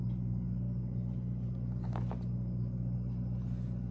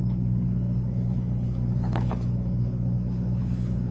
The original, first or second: first